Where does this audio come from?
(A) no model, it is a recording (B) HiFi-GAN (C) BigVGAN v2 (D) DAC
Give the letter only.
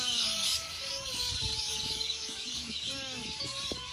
D